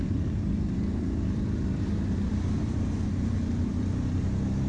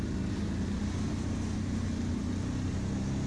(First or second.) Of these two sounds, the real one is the second